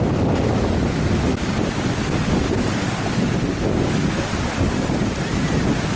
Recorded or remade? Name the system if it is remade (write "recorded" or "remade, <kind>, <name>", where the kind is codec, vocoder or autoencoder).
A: recorded